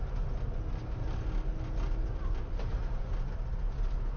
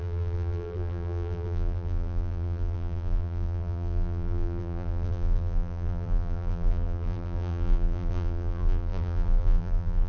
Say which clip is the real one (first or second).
first